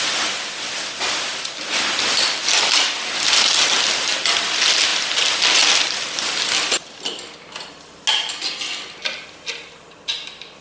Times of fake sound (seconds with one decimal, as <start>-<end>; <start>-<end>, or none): none